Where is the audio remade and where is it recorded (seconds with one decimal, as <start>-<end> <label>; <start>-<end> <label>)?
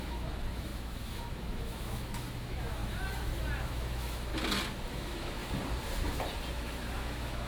0.0-2.8 remade; 2.8-3.6 recorded; 3.6-4.3 remade; 4.3-4.9 recorded; 4.9-5.4 remade; 5.4-6.5 recorded; 6.5-7.5 remade